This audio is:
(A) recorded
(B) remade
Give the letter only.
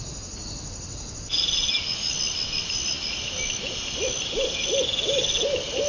A